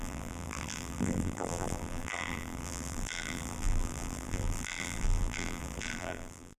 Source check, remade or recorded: remade